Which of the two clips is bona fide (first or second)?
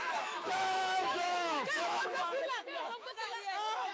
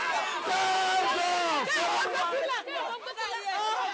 second